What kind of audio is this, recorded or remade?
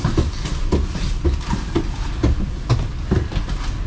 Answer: recorded